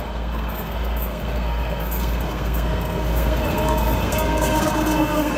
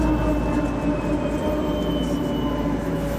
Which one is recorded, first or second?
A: second